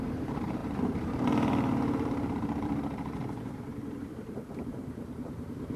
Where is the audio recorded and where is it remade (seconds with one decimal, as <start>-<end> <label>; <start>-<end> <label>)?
0.0-5.8 remade